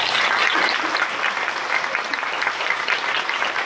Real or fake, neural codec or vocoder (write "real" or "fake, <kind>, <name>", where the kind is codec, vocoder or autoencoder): real